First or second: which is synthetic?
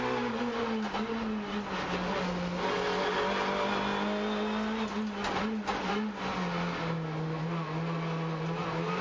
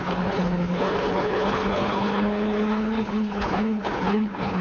second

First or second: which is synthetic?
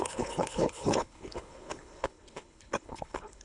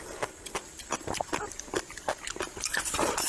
first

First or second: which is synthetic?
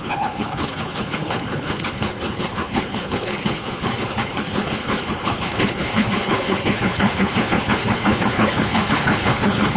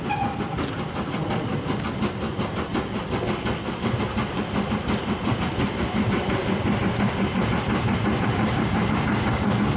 first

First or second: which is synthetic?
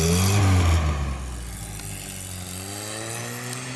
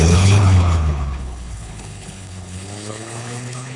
second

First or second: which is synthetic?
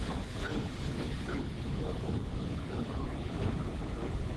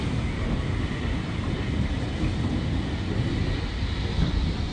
first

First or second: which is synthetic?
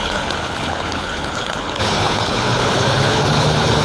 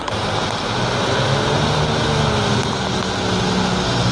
first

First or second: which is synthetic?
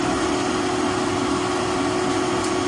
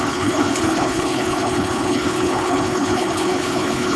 second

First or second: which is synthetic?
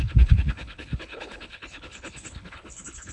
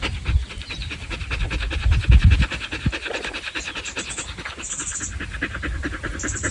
first